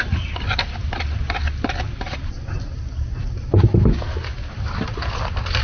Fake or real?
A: real